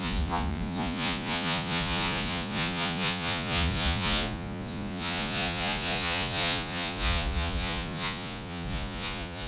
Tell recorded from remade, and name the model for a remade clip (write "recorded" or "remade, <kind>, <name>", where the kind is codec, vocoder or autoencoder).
remade, vocoder, Vocos